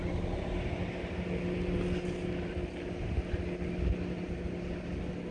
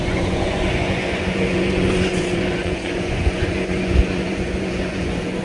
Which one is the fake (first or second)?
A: second